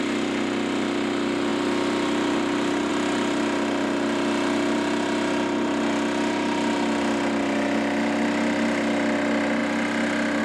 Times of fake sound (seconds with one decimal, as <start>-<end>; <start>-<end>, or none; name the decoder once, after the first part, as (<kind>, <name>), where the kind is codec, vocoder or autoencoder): none